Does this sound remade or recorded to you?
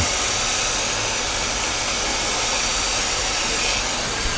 recorded